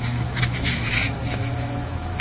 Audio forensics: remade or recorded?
remade